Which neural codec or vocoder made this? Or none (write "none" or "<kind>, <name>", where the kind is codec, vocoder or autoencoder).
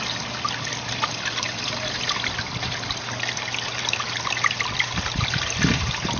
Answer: none